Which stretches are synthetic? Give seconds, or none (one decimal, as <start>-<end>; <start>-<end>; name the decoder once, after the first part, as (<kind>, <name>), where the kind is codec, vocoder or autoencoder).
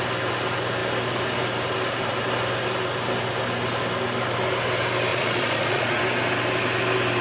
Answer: 5.1-6.0 (vocoder, Vocos)